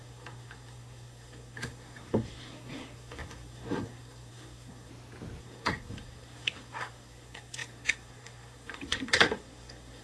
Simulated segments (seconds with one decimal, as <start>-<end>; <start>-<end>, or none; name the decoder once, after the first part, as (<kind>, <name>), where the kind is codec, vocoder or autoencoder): 0.0-4.9 (codec, SNAC); 5.4-10.0